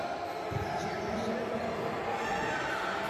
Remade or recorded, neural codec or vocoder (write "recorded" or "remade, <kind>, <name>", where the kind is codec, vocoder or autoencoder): recorded